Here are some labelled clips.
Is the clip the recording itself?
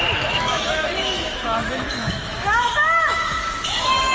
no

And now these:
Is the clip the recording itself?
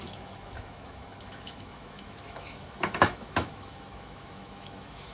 no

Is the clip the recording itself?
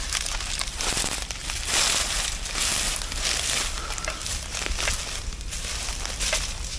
yes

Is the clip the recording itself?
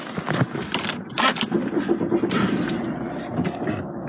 yes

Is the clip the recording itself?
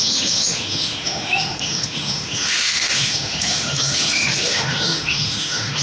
no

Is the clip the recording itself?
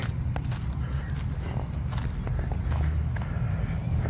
yes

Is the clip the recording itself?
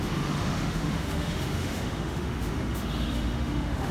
no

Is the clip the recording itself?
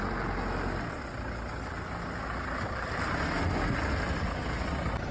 yes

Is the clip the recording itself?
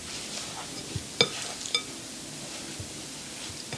yes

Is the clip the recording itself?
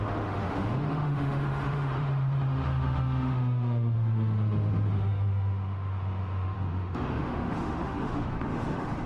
no